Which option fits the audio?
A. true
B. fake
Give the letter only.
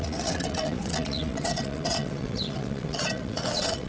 B